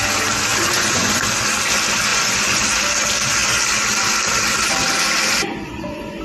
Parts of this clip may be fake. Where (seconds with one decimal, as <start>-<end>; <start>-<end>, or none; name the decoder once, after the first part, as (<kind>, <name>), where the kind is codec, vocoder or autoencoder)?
0.5-1.2 (vocoder, Vocos); 2.1-2.6; 5.3-6.2